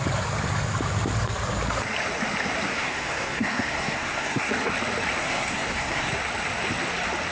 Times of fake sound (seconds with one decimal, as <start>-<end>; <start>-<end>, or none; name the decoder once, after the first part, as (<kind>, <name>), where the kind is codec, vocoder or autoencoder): 2.7-4.5 (codec, SNAC); 5.2-6.1

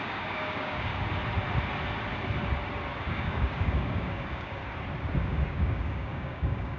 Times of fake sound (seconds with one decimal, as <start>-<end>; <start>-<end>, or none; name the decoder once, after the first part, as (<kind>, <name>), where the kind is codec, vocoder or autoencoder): 0.0-0.9 (codec, DAC); 3.0-4.6; 5.2-6.8

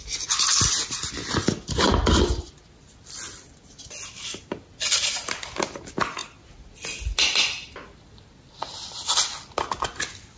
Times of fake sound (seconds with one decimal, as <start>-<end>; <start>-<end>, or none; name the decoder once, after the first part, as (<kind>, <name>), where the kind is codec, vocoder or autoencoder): none